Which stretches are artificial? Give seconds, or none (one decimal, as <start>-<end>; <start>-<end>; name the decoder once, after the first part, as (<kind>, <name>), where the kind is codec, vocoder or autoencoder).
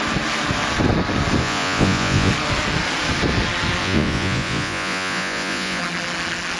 1.4-2.3 (vocoder, Vocos); 3.8-5.8